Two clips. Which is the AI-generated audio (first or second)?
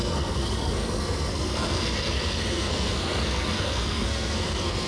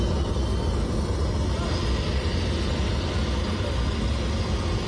first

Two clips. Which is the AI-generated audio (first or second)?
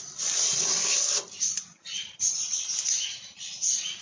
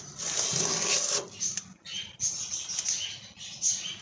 first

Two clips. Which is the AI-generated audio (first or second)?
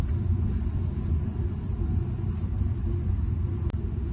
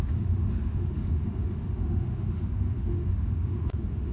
second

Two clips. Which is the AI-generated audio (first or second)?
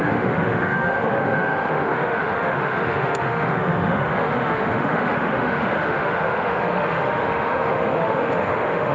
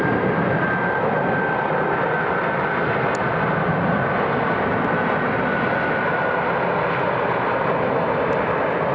first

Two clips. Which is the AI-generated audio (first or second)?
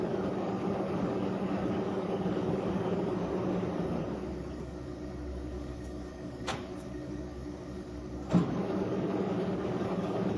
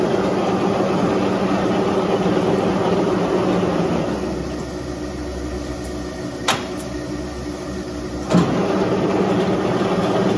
first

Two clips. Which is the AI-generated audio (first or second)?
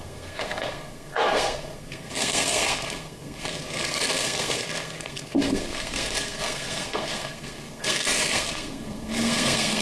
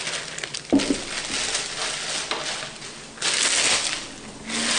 first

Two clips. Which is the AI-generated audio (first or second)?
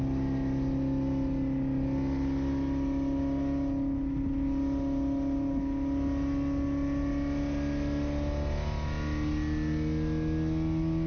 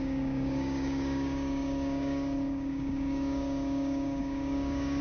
second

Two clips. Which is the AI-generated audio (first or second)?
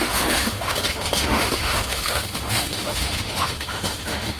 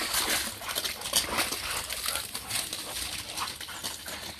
first